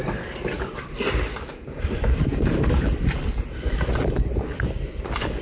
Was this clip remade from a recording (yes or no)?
no